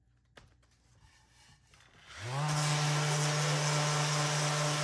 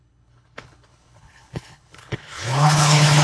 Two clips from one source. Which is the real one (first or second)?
first